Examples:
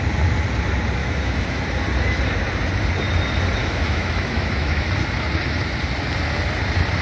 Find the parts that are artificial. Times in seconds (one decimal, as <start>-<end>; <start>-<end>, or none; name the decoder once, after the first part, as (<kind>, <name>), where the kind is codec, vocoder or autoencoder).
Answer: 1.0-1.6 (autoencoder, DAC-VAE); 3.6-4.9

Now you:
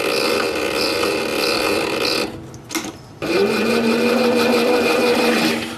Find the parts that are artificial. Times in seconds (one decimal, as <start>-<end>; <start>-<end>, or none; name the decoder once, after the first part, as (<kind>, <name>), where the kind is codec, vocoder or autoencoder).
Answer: none

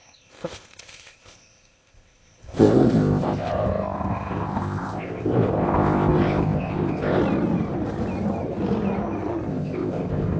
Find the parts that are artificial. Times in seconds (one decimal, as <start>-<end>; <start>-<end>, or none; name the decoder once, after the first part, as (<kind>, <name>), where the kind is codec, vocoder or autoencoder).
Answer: 0.0-7.2 (codec, ZipCodec); 9.5-10.4

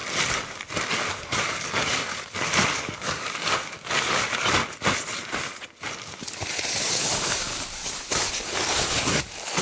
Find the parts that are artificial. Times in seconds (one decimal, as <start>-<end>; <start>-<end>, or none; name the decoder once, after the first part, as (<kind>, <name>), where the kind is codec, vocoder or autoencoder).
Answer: 0.9-4.6 (codec, DAC); 6.8-7.8; 8.3-9.6